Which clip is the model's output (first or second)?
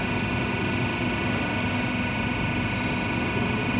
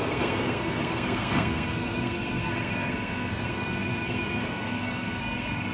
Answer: second